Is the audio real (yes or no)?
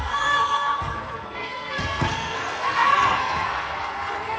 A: no